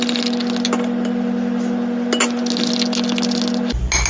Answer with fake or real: real